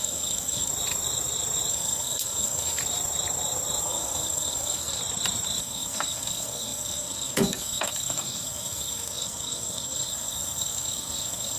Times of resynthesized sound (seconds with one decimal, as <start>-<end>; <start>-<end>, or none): 0.0-0.7; 1.7-2.8; 3.8-5.0; 5.6-11.6